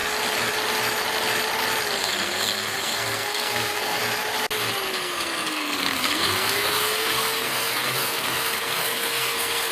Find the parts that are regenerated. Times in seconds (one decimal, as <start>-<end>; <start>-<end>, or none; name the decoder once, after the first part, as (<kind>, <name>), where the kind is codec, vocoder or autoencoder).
2.0-4.0 (codec, SNAC); 4.9-9.7